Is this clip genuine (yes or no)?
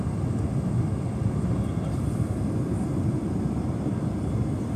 yes